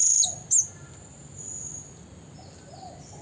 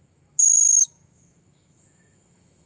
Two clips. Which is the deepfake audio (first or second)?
second